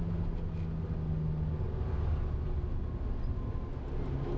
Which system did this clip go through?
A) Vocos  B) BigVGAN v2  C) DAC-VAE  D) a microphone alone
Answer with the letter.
D